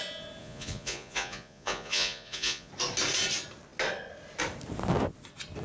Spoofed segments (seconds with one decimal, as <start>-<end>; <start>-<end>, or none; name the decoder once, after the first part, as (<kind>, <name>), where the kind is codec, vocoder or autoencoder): 0.4-2.7 (vocoder, Vocos)